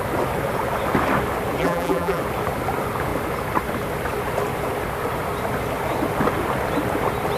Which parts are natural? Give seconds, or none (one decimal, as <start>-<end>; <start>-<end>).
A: 0.0-1.6; 2.2-7.4